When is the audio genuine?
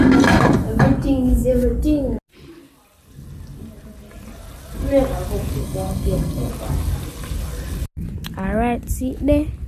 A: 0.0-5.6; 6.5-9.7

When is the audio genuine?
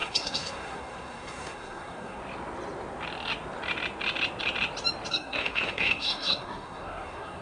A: 2.2-5.1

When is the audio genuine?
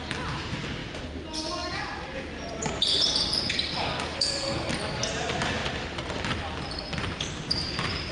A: 0.0-4.1; 4.7-8.1